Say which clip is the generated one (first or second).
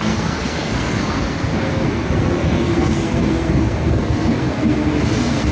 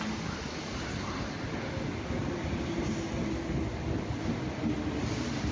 first